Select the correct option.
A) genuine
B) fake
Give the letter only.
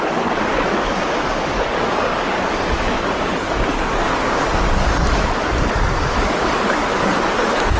B